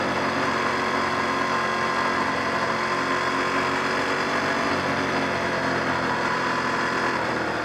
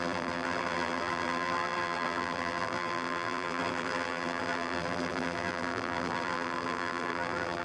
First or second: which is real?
first